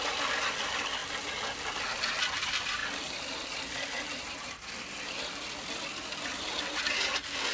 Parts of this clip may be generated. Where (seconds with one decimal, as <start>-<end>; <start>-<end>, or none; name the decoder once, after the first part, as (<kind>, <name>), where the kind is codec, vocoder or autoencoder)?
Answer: none